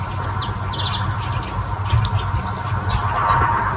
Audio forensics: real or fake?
real